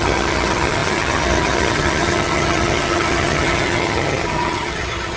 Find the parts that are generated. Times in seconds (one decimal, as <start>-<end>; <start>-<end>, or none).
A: 0.0-5.2